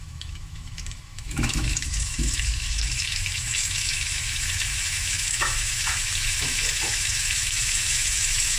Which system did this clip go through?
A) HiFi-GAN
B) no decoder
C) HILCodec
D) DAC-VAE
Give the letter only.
D